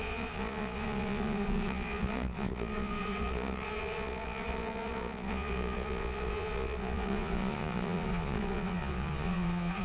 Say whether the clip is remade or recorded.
remade